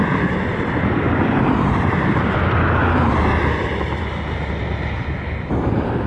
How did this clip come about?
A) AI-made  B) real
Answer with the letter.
A